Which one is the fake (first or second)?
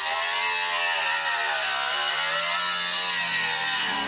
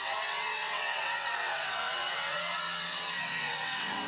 second